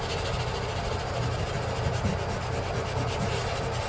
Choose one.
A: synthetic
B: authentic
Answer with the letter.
B